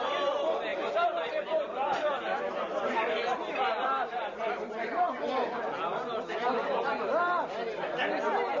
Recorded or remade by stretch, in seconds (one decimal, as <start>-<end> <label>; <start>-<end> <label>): 0.0-0.7 recorded; 0.7-5.1 remade; 5.1-8.6 recorded